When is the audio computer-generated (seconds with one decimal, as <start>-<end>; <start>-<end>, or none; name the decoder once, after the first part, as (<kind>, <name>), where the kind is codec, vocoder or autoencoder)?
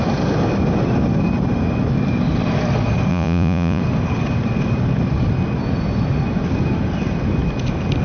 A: 3.1-3.8 (vocoder, Vocos)